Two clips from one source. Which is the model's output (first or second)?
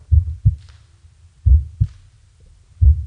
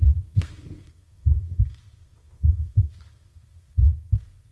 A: second